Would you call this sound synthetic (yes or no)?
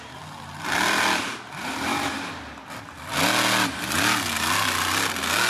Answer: no